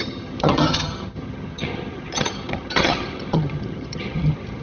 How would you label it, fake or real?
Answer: fake